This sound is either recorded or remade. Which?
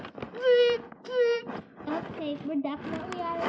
recorded